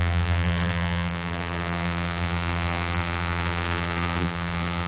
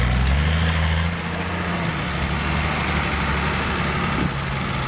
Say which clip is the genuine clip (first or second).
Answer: second